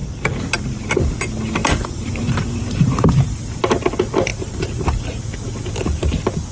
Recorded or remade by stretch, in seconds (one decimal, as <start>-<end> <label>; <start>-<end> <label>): 0.0-1.6 recorded; 1.6-3.6 remade; 3.6-4.3 recorded; 4.3-5.0 remade; 5.0-6.5 recorded